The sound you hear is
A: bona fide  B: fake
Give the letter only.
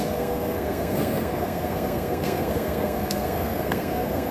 B